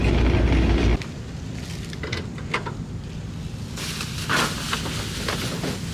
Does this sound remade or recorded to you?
recorded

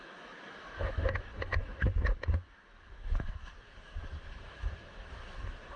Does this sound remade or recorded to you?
remade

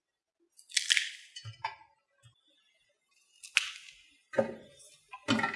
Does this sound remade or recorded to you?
recorded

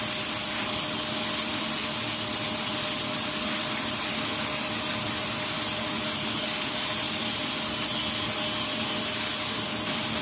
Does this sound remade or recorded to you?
recorded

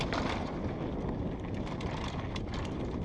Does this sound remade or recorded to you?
recorded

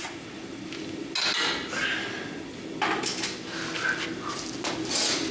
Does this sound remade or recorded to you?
recorded